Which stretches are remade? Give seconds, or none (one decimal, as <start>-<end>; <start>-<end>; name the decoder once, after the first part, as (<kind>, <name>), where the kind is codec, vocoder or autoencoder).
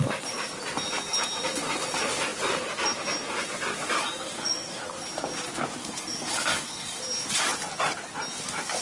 4.0-4.8 (codec, DAC); 5.8-7.0